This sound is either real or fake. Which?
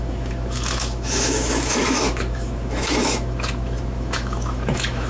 fake